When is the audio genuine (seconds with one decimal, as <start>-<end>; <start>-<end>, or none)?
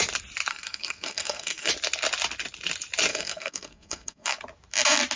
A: 0.0-0.5; 1.7-3.1; 4.4-5.2